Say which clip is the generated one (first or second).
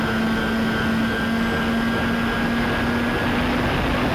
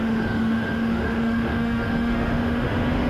second